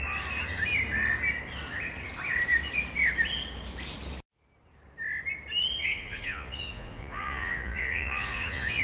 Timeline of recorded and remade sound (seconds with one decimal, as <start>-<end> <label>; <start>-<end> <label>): 0.0-5.8 recorded; 5.8-8.8 remade